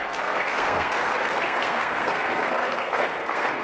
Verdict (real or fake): fake